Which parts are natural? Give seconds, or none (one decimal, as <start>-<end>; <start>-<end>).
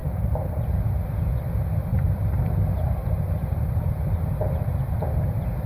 1.0-1.9; 2.5-3.0